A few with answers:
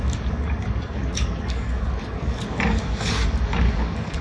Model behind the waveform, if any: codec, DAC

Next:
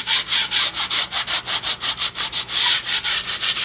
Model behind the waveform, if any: none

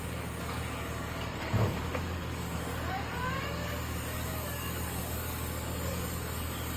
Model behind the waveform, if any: codec, DAC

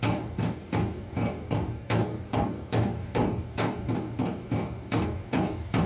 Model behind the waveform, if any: codec, DAC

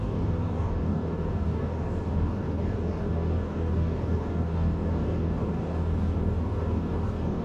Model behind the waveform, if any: codec, DAC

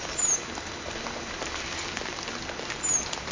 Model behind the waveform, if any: none